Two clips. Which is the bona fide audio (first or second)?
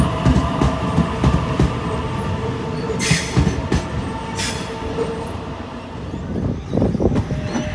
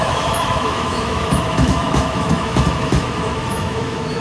first